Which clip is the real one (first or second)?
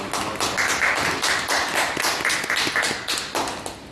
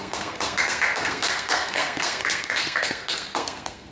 first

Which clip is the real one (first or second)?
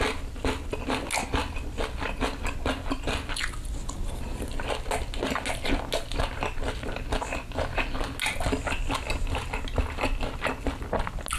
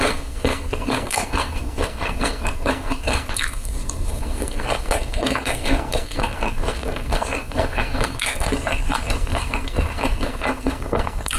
first